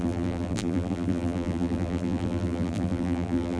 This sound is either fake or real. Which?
fake